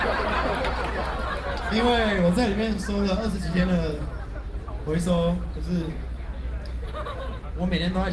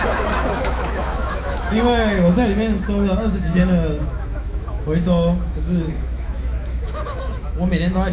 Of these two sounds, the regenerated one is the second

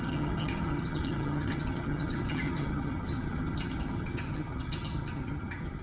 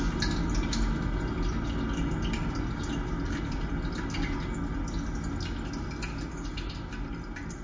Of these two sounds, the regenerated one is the first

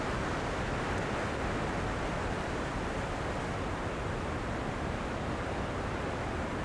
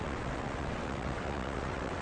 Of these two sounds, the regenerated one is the second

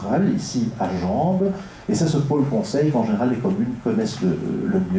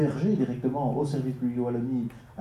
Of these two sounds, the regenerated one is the first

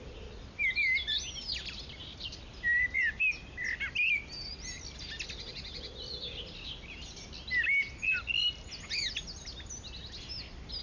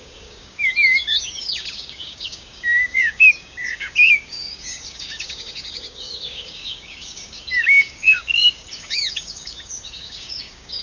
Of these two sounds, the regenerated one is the second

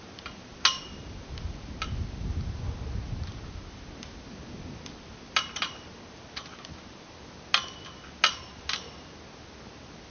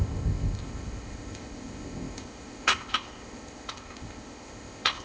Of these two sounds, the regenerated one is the second